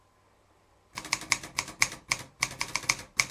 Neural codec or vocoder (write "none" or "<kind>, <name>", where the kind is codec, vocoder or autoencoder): none